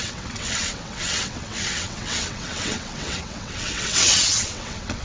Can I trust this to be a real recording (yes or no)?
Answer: no